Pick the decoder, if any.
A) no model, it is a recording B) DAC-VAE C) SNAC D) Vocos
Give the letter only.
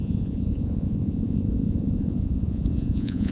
D